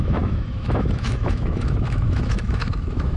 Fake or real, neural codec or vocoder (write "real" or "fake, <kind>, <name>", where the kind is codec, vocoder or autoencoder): fake, autoencoder, DAC-VAE